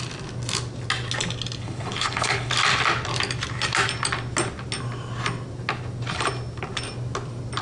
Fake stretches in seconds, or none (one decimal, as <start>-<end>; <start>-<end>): 1.6-2.5